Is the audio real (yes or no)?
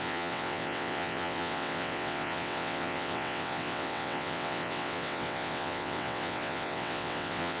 no